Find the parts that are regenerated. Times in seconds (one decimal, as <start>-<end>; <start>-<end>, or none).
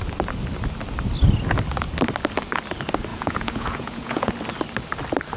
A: 3.1-4.3